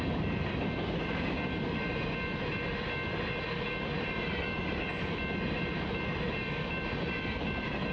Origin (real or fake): real